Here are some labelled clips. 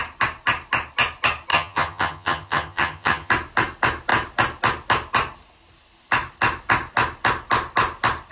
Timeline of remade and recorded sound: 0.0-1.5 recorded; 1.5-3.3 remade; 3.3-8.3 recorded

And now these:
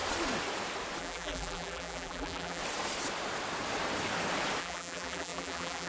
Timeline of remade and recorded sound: 0.0-1.0 recorded; 1.0-2.6 remade; 2.6-4.6 recorded; 4.6-5.9 remade

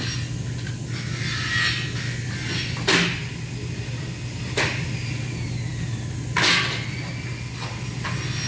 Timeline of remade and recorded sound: 0.0-8.5 recorded

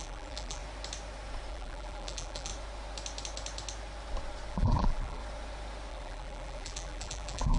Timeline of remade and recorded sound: 0.0-0.6 remade; 0.6-1.5 recorded; 1.5-2.5 remade; 2.5-4.5 recorded; 4.5-5.2 remade; 5.2-5.9 recorded; 5.9-7.6 remade

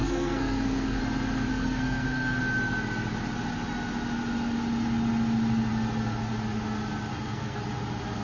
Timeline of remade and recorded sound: 0.0-1.0 remade; 1.0-1.5 recorded; 1.5-2.4 remade; 2.4-7.1 recorded; 7.1-7.6 remade; 7.6-8.2 recorded

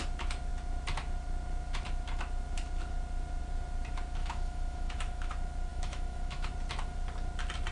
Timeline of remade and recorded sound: 0.0-4.2 recorded; 4.2-5.3 remade; 5.3-5.7 recorded; 5.7-6.5 remade; 6.5-7.7 recorded